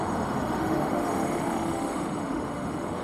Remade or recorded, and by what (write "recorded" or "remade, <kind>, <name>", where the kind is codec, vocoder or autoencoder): remade, autoencoder, DAC-VAE